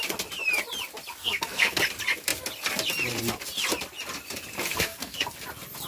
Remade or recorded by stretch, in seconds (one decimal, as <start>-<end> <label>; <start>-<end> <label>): 0.0-1.2 recorded; 1.2-1.8 remade; 1.8-4.7 recorded; 4.7-5.3 remade; 5.3-5.9 recorded